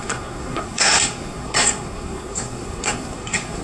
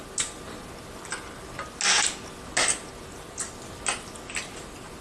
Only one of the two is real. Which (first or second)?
second